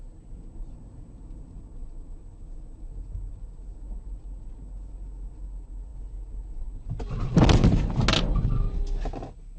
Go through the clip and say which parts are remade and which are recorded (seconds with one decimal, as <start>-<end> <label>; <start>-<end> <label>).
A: 0.0-9.6 recorded